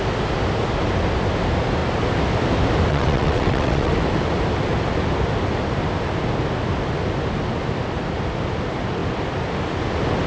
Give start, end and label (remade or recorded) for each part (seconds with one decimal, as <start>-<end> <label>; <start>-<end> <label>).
0.0-2.9 recorded; 2.9-3.9 remade; 3.9-10.3 recorded

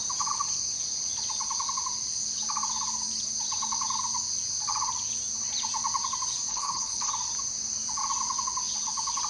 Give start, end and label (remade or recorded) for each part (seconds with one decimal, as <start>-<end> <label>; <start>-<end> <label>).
0.0-6.5 recorded; 6.5-7.1 remade; 7.1-9.3 recorded

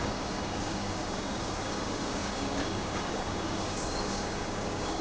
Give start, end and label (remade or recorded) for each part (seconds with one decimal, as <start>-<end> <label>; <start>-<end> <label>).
0.0-5.0 remade

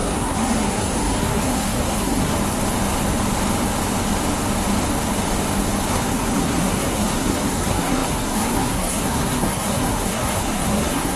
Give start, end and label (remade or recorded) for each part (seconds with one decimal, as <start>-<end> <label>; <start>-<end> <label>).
0.0-2.3 remade; 2.3-5.9 recorded; 5.9-11.2 remade